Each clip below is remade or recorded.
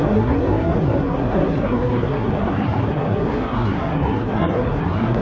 remade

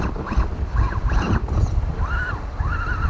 recorded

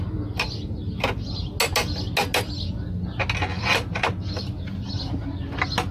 recorded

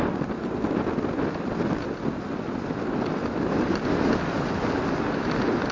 recorded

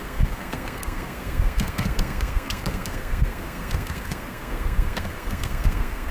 remade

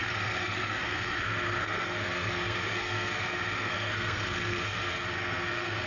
remade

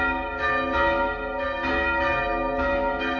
recorded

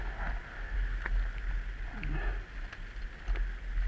recorded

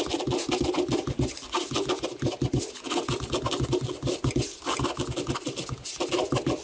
recorded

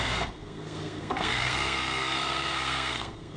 remade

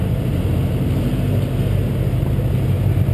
recorded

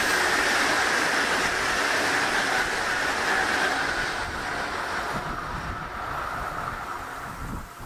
recorded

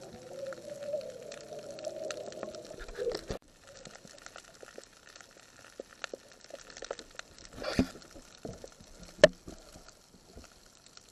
recorded